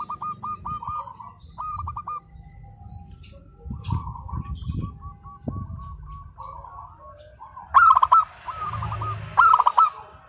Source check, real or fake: real